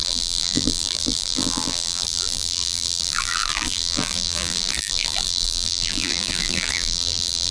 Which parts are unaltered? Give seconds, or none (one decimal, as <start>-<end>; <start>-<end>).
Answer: none